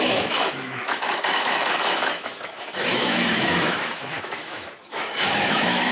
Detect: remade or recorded remade